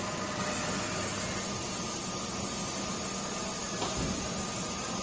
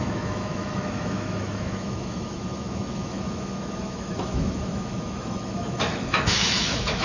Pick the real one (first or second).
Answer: first